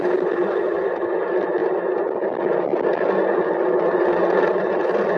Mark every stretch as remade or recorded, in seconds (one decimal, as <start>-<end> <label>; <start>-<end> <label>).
0.0-1.6 remade; 1.6-4.4 recorded; 4.4-5.2 remade